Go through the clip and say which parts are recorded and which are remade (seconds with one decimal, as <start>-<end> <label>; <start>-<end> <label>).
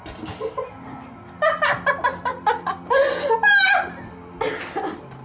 0.0-5.2 recorded